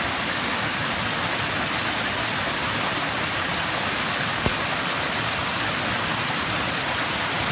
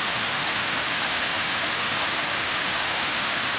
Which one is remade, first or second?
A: second